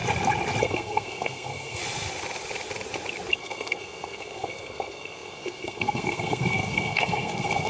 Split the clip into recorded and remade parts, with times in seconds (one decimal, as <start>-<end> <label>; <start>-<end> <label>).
0.0-0.6 recorded; 0.6-1.8 remade; 1.8-3.3 recorded; 3.3-7.7 remade